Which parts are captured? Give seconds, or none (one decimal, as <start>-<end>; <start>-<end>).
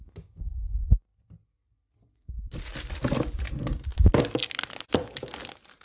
0.0-5.8